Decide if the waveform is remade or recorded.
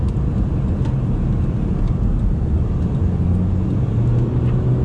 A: recorded